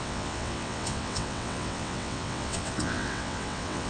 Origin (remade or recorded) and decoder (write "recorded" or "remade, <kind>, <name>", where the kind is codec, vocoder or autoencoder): remade, vocoder, WaveNeXt